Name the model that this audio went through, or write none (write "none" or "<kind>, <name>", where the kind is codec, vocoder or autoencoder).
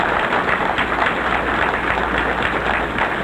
none